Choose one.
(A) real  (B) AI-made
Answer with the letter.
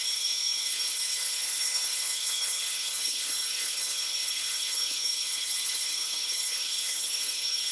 B